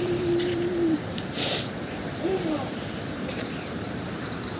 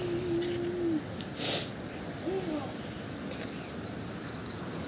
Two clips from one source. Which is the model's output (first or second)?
first